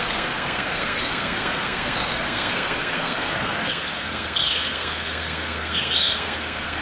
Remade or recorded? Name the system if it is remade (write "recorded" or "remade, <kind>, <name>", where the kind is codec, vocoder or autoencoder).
remade, codec, SNAC